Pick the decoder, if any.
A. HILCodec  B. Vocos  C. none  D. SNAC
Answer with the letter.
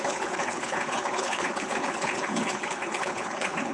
A